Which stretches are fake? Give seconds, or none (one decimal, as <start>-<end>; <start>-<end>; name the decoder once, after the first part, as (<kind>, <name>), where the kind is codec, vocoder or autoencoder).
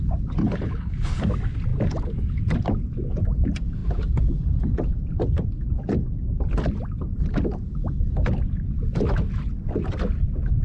0.4-1.2 (codec, HILCodec)